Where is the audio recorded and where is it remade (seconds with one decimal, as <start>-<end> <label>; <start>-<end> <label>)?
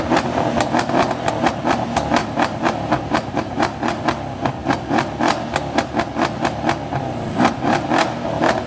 0.0-2.2 recorded; 2.2-4.0 remade; 4.0-8.7 recorded